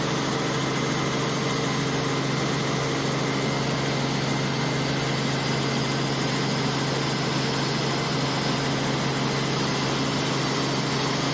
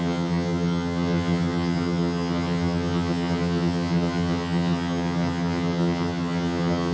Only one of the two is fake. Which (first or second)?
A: second